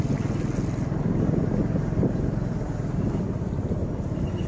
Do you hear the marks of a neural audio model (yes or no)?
no